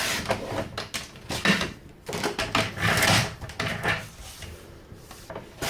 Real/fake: real